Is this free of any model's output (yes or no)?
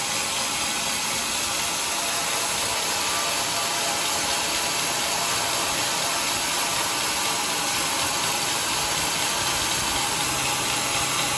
yes